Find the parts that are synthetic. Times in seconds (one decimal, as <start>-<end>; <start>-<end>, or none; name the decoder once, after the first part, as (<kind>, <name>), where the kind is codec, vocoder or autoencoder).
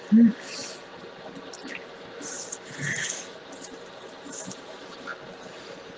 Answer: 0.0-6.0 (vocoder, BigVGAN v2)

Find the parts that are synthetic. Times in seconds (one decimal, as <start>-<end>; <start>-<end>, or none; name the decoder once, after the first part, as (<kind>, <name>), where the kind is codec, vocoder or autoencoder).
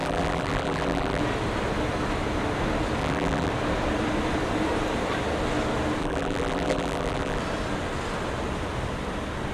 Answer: 0.0-1.2 (vocoder, BigVGAN v2); 3.0-3.5; 6.0-7.4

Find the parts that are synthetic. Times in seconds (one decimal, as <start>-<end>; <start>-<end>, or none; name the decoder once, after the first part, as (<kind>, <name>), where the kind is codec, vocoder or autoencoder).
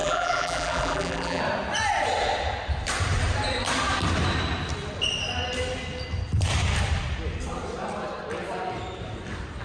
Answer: 0.0-1.4 (vocoder, BigVGAN v2)